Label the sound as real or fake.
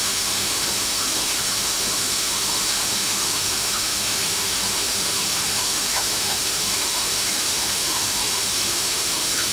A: fake